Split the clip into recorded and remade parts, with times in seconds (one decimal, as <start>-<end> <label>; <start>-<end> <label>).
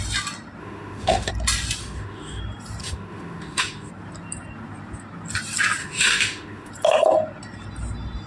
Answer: 0.0-0.6 recorded; 0.6-1.3 remade; 1.3-1.8 recorded; 1.8-2.4 remade; 2.4-2.8 recorded; 2.8-3.9 remade; 3.9-5.8 recorded; 5.8-6.7 remade; 6.7-8.3 recorded